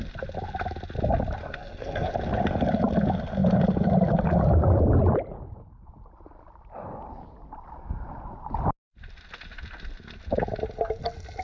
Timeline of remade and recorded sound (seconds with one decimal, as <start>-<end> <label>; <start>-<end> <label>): 0.0-1.4 recorded; 1.4-2.1 remade; 2.1-11.4 recorded